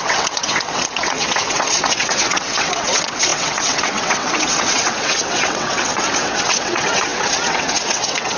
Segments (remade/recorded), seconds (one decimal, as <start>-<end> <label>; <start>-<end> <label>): 0.0-8.4 remade